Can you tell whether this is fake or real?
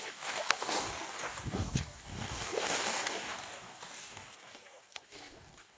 fake